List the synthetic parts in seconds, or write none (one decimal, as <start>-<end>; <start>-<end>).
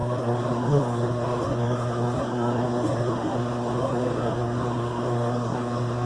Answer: 0.0-6.1